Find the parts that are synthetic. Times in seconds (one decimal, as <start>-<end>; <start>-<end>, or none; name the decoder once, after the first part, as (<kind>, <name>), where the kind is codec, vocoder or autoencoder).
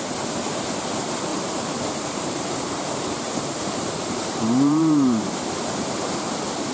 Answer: 1.3-5.3 (vocoder, BigVGAN v2)